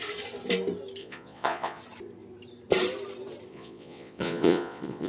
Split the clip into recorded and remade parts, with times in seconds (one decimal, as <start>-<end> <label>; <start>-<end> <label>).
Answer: 0.0-1.0 recorded; 1.0-1.8 remade; 1.8-3.5 recorded; 3.5-5.1 remade